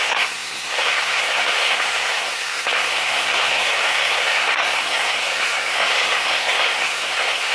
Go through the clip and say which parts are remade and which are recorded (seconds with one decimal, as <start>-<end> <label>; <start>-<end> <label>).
0.0-7.5 remade